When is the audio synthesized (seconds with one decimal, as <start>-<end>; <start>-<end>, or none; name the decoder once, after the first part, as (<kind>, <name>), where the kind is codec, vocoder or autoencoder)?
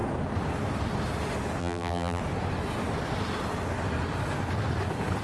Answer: 1.6-2.2 (vocoder, BigVGAN v2)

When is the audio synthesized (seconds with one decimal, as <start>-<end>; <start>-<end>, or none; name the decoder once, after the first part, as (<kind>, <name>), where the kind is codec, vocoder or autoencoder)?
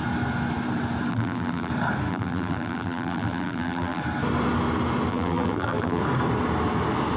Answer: 1.1-1.7 (vocoder, BigVGAN v2); 2.1-4.0; 5.1-6.0